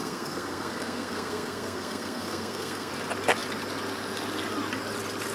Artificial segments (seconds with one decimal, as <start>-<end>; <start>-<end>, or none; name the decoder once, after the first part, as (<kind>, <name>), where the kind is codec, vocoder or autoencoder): 0.0-2.9 (codec, SNAC)

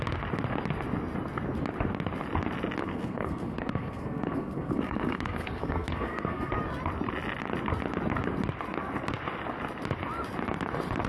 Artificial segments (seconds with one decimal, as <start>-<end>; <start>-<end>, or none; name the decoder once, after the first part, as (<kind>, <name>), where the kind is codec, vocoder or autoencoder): 2.8-6.5 (codec, SNAC)